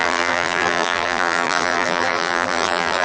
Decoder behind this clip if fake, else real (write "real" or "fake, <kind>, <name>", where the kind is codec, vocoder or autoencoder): fake, vocoder, BigVGAN v2